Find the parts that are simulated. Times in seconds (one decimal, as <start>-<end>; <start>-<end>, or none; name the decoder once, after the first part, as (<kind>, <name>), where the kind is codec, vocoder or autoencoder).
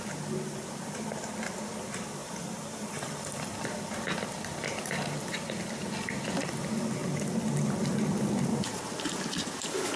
2.2-3.5 (vocoder, BigVGAN v2)